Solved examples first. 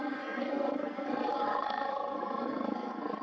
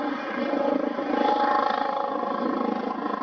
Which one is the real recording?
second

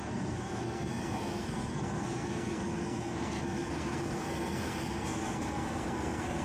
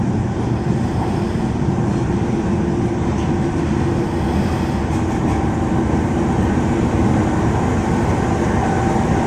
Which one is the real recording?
second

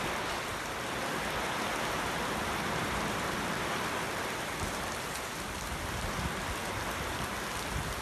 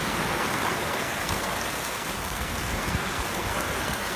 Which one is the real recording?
first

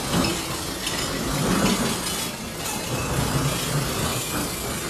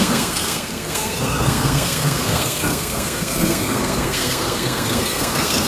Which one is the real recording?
first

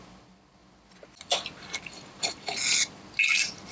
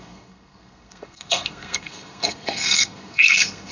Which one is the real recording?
first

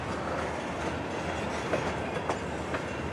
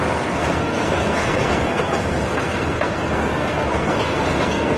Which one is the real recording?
first